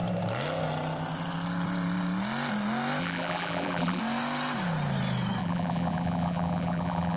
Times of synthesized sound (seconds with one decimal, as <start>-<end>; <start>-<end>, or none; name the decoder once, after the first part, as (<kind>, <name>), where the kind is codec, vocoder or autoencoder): 3.0-4.0 (vocoder, BigVGAN v2); 5.4-7.2